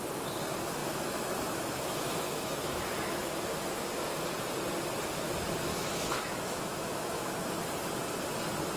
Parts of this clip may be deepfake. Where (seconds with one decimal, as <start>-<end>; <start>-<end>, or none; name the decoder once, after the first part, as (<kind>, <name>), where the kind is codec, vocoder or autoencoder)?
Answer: 0.8-3.3 (autoencoder, DAC-VAE); 5.7-7.7